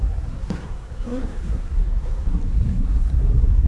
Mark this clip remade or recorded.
remade